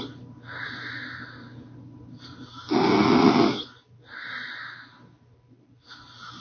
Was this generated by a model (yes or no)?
no